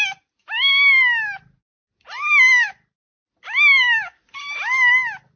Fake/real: real